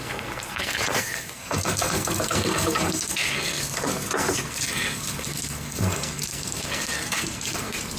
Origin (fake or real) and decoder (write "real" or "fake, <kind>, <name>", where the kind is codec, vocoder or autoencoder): fake, codec, SNAC